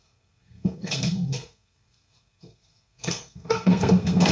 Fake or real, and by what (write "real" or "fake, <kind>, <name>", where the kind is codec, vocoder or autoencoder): fake, codec, SNAC